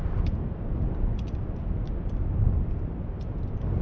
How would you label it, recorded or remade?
recorded